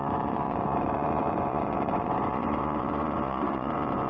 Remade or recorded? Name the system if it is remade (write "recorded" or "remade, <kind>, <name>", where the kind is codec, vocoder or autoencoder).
remade, vocoder, Vocos